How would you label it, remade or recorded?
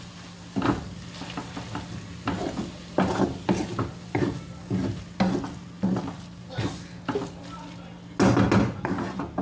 recorded